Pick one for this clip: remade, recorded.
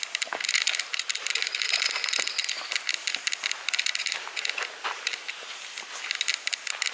recorded